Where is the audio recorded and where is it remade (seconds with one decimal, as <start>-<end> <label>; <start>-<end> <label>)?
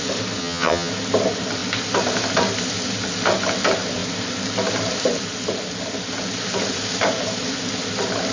0.0-0.4 recorded; 0.4-0.9 remade; 0.9-8.3 recorded